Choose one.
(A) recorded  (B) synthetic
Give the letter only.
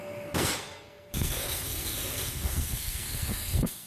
B